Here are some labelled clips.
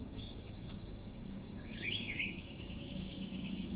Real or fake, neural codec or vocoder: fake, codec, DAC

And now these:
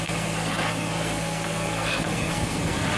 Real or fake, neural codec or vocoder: fake, codec, SNAC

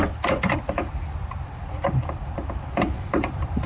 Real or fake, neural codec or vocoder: real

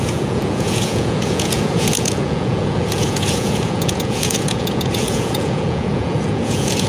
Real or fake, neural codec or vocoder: fake, vocoder, Vocos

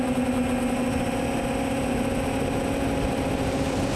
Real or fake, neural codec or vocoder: real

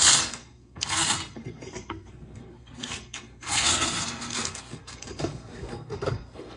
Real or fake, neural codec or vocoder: fake, codec, SNAC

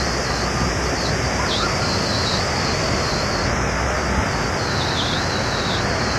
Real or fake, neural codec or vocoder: real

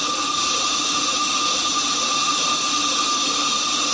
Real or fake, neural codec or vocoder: fake, vocoder, BigVGAN v2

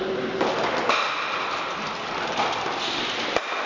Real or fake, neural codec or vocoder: real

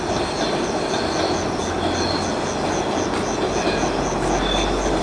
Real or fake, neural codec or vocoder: real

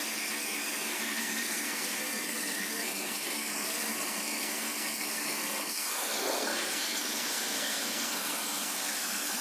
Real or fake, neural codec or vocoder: fake, codec, SNAC